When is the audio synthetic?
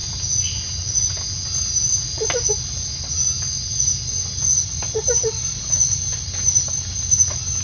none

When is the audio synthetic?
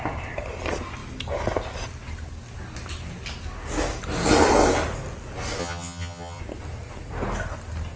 5.6-6.4 (vocoder, HiFi-GAN)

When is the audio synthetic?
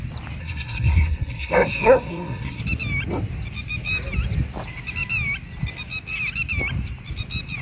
0.4-2.6 (codec, SNAC)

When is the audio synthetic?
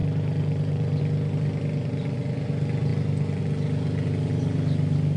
0.0-1.0 (vocoder, BigVGAN v2)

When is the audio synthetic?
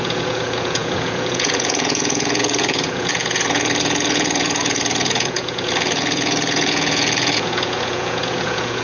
0.0-8.8 (vocoder, Vocos)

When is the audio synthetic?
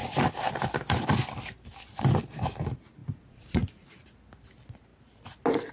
3.0-4.0 (vocoder, Vocos)